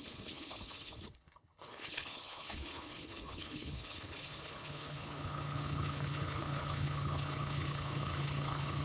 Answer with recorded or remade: remade